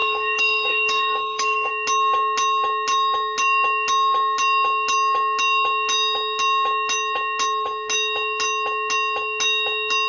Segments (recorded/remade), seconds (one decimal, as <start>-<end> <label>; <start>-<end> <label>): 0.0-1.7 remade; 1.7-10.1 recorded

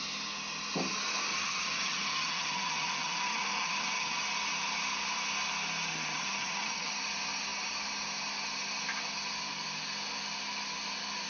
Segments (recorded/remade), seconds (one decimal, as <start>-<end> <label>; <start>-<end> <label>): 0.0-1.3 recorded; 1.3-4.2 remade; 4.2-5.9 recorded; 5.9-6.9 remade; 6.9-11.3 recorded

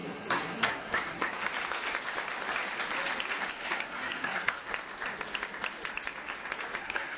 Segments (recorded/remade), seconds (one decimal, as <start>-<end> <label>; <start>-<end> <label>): 0.0-1.5 remade; 1.5-3.5 recorded; 3.5-4.7 remade; 4.7-6.8 recorded; 6.8-7.2 remade

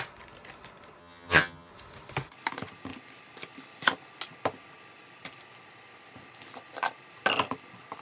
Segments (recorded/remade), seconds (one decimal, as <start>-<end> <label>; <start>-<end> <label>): 0.0-1.0 recorded; 1.0-1.7 remade; 1.7-8.0 recorded

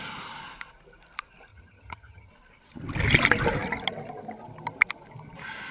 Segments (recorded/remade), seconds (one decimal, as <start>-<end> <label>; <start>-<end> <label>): 0.0-1.5 recorded; 1.5-2.3 remade; 2.3-5.7 recorded

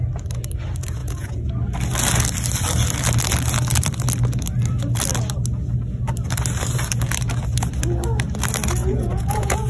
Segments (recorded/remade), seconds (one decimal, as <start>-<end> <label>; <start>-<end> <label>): 0.0-1.0 recorded; 1.0-1.5 remade; 1.5-8.8 recorded; 8.8-9.7 remade

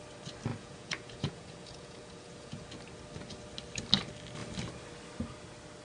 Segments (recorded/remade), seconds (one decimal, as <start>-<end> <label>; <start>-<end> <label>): 0.0-0.5 recorded; 0.5-2.6 remade; 2.6-5.8 recorded

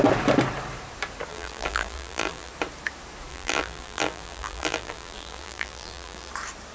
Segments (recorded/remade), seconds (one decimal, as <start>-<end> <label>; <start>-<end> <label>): 0.0-1.3 recorded; 1.3-2.5 remade; 2.5-3.3 recorded; 3.3-6.3 remade; 6.3-6.7 recorded